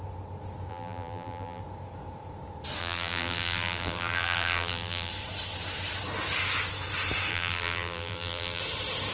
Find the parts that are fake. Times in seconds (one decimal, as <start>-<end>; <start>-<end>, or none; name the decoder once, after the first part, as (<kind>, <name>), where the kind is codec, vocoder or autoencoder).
0.7-1.6 (vocoder, BigVGAN v2); 2.8-5.1; 7.3-8.6